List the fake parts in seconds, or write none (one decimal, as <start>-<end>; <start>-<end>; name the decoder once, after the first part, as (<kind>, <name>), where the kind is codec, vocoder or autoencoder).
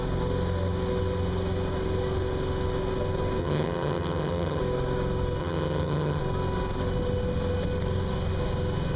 3.4-4.6 (vocoder, HiFi-GAN); 5.4-6.2